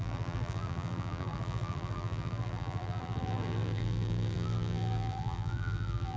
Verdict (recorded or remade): remade